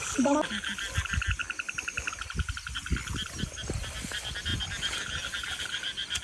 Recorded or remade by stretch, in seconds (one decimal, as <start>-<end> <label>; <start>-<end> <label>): 0.0-6.2 recorded